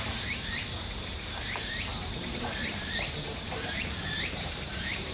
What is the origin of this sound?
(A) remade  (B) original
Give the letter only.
A